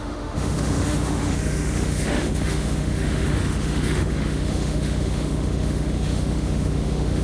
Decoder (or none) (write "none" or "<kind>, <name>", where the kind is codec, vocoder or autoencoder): autoencoder, DAC-VAE